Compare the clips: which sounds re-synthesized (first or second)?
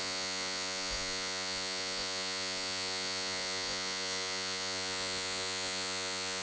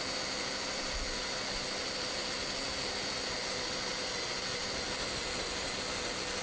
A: first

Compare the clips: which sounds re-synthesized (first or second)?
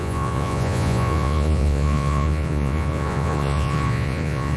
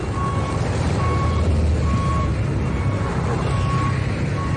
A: first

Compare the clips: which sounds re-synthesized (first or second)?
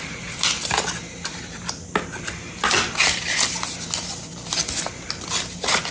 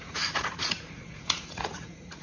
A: second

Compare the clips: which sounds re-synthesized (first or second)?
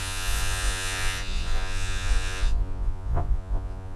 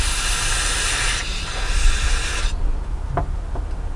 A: first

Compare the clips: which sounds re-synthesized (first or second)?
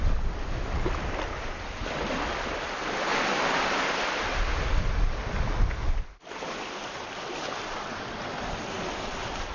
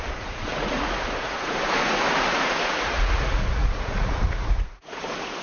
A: second